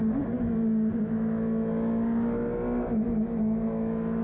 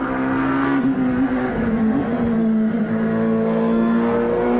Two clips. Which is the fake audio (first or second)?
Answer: second